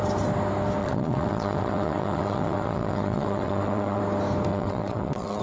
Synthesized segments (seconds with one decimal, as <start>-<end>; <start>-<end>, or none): 0.8-4.0; 4.5-5.4